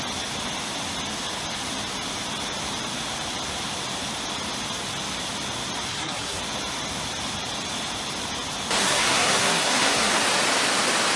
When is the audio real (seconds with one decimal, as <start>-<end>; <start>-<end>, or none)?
0.0-5.9; 6.4-8.8; 10.2-11.2